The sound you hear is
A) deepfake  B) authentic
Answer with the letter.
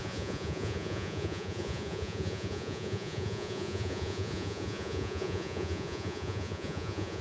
A